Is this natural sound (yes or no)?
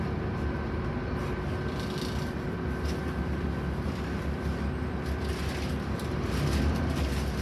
yes